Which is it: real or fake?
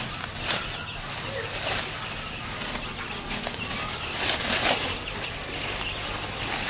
real